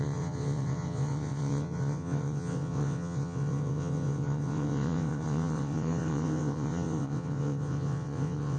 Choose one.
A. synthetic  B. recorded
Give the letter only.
A